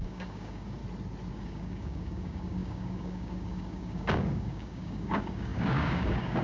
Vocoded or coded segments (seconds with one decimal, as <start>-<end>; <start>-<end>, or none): 0.0-0.8; 1.3-6.4